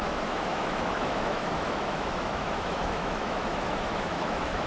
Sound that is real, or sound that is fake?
fake